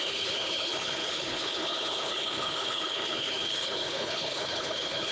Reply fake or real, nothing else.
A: fake